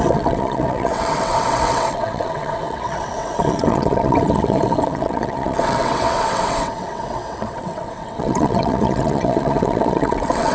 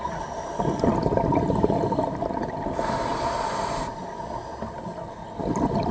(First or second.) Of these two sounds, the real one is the second